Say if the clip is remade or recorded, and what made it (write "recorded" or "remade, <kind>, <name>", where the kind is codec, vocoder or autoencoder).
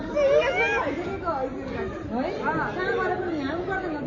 recorded